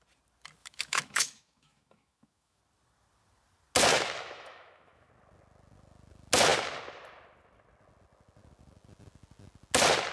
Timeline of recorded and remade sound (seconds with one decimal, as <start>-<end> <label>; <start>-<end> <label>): 0.0-0.6 recorded; 0.6-2.6 remade; 2.6-3.9 recorded; 3.9-5.1 remade; 5.1-10.1 recorded